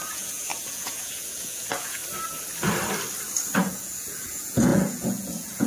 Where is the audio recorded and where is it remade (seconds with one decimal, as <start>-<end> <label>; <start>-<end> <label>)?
0.0-2.0 remade; 2.0-3.6 recorded; 3.6-5.7 remade